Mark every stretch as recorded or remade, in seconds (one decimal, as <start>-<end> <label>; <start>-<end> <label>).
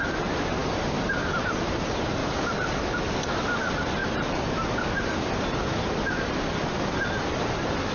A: 0.0-7.9 recorded